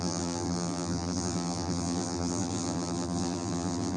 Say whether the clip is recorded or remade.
remade